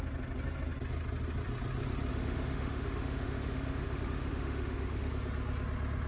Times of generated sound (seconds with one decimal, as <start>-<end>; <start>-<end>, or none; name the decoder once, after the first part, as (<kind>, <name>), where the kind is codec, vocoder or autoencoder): 2.1-5.1 (autoencoder, DAC-VAE)